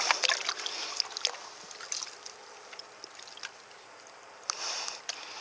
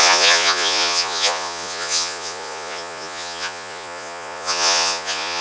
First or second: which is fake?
second